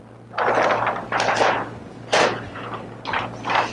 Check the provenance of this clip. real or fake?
real